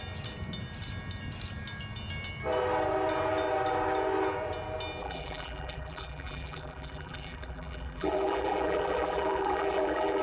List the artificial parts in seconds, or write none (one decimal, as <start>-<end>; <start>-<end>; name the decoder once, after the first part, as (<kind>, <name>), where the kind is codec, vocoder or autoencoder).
5.0-10.2 (vocoder, BigVGAN v2)